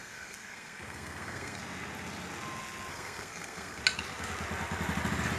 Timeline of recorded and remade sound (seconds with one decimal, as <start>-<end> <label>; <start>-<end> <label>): 0.0-1.6 remade; 1.6-2.9 recorded; 2.9-3.8 remade; 3.8-5.4 recorded